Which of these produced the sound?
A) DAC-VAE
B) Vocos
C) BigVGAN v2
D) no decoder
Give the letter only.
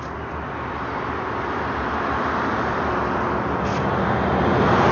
C